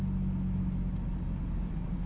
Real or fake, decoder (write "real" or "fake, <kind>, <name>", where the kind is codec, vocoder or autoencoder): real